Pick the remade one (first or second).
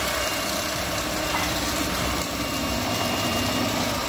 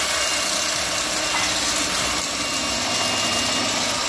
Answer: first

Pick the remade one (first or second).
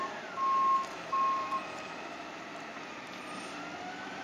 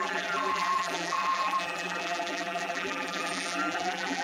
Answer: second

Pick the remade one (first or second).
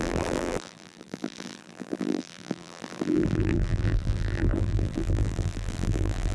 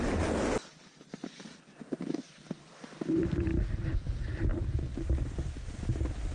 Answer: first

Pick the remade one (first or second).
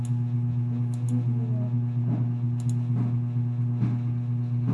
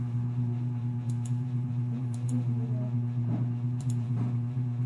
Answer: second